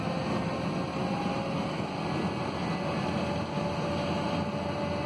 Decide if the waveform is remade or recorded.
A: recorded